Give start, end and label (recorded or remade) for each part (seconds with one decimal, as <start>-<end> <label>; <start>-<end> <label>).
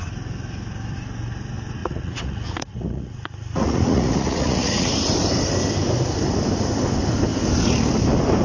0.0-1.8 recorded; 1.8-4.9 remade; 4.9-8.4 recorded